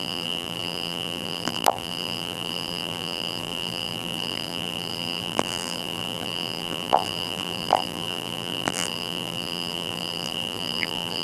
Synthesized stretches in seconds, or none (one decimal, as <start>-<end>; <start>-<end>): 0.0-11.2